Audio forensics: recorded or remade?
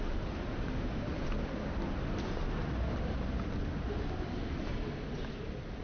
recorded